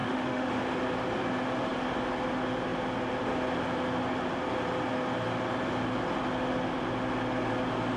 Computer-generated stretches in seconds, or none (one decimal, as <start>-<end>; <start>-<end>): 0.0-0.5